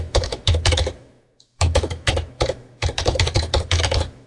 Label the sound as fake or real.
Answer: fake